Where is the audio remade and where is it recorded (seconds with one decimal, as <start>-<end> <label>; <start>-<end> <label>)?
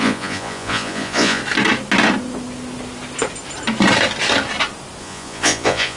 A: 0.0-1.4 remade; 1.4-5.0 recorded; 5.0-6.0 remade